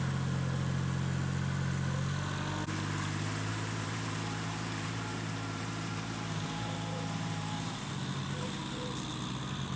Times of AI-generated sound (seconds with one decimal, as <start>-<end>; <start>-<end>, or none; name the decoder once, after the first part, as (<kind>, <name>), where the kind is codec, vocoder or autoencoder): 3.5-7.9 (vocoder, BigVGAN v2)